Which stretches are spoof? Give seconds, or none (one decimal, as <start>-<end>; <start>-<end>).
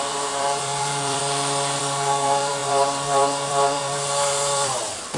0.0-1.2; 1.8-5.2